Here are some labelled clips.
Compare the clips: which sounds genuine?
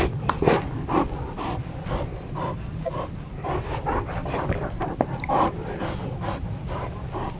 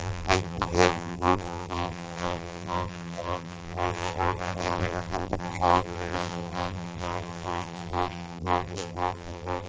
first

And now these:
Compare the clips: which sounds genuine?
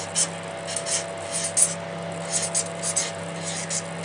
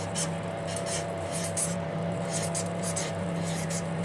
first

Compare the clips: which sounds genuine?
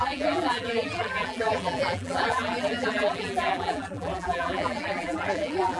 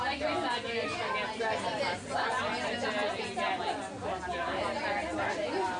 second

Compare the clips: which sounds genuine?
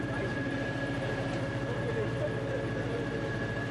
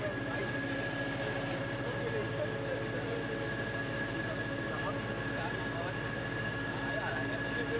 second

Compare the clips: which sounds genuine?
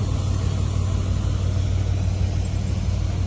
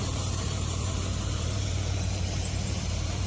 first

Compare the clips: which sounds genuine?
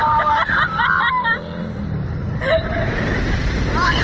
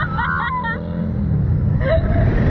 second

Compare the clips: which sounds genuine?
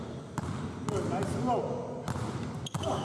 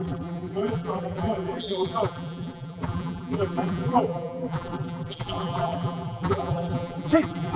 first